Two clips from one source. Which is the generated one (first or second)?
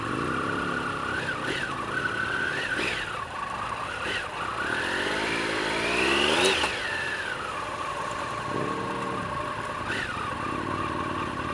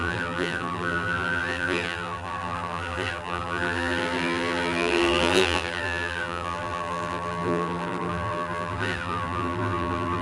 second